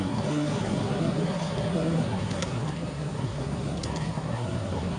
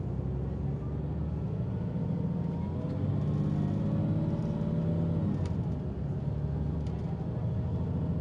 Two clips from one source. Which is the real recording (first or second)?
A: second